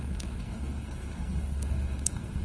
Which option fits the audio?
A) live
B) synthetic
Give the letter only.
B